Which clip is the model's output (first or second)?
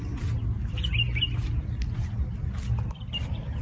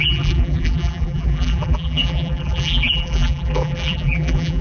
second